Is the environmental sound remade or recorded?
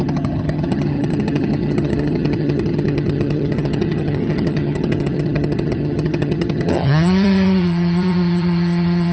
remade